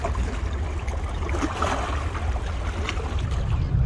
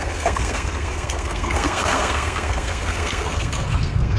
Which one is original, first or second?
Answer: first